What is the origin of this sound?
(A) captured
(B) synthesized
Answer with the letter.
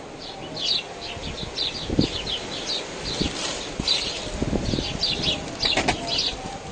A